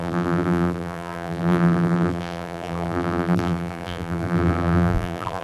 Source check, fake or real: fake